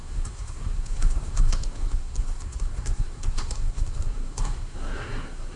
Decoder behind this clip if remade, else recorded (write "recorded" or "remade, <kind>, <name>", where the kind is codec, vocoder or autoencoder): remade, codec, SNAC